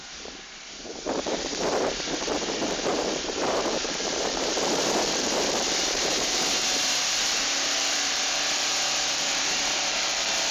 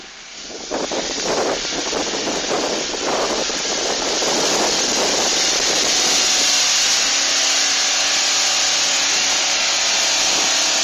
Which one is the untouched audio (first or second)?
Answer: second